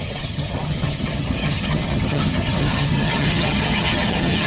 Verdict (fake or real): fake